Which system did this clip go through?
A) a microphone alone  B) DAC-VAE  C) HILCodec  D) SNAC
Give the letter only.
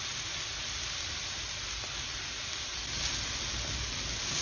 A